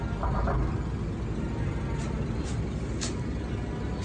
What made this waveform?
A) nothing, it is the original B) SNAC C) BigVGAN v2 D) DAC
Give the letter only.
A